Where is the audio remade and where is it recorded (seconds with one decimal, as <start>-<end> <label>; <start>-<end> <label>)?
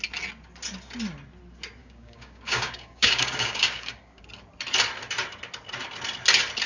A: 0.0-1.8 recorded; 1.8-4.2 remade; 4.2-6.7 recorded